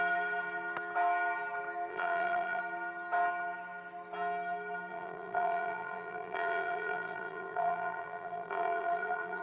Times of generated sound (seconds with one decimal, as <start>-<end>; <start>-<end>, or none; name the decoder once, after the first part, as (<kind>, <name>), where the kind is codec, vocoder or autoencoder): 1.9-2.6 (vocoder, BigVGAN v2); 4.9-9.4